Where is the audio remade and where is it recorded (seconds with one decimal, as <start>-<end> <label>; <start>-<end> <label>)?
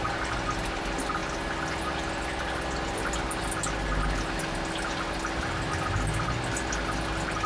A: 0.0-7.5 recorded